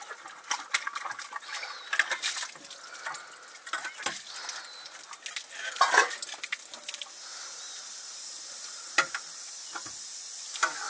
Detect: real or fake real